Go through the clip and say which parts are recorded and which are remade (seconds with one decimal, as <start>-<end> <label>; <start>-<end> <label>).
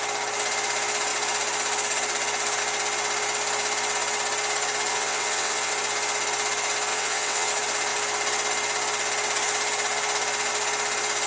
0.0-4.9 recorded; 4.9-5.7 remade; 5.7-6.9 recorded; 6.9-7.5 remade; 7.5-11.3 recorded